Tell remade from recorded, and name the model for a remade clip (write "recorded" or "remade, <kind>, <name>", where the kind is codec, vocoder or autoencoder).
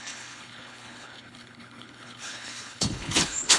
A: remade, codec, HILCodec